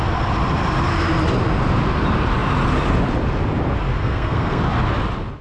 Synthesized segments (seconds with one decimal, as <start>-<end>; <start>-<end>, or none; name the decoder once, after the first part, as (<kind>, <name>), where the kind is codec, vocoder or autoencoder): 4.0-4.6 (codec, SNAC)